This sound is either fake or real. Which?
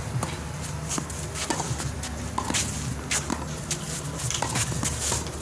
real